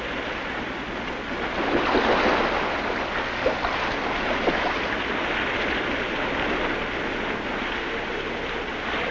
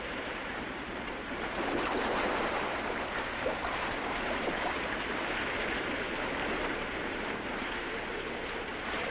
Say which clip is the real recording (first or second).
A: first